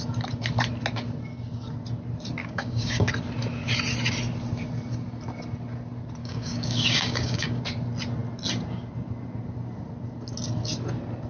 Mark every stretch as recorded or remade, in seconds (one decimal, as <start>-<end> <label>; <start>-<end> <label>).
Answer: 0.0-2.4 recorded; 2.4-3.1 remade; 3.1-6.2 recorded; 6.2-7.6 remade; 7.6-11.3 recorded